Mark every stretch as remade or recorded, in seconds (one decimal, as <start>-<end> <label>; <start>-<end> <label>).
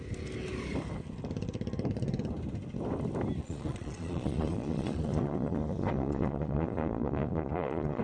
0.0-3.4 recorded; 3.4-8.0 remade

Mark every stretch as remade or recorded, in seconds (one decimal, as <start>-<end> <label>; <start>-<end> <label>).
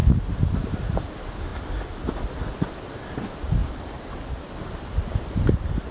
0.0-0.6 remade; 0.6-3.6 recorded; 3.6-4.5 remade; 4.5-5.9 recorded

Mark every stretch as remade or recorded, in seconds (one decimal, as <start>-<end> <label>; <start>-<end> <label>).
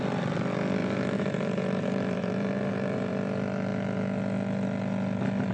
0.0-0.8 recorded; 0.8-3.1 remade; 3.1-5.5 recorded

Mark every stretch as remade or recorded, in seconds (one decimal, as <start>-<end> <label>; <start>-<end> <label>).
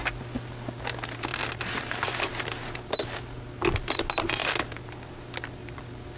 0.0-6.2 recorded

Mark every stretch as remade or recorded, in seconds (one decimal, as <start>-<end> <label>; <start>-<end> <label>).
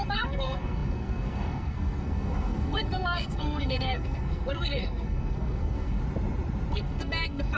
0.0-6.0 remade; 6.0-6.7 recorded; 6.7-7.6 remade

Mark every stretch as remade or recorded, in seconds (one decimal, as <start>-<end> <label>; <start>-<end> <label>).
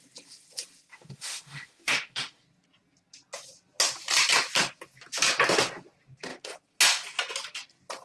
0.0-0.9 recorded; 0.9-2.4 remade; 2.4-8.0 recorded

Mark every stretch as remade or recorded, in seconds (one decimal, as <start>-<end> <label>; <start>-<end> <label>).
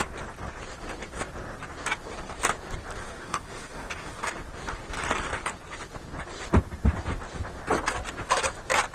0.0-3.0 recorded; 3.0-4.3 remade; 4.3-8.9 recorded